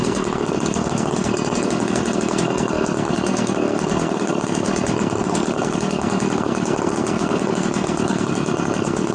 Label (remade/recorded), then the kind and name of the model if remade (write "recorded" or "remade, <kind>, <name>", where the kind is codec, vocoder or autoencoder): remade, codec, SNAC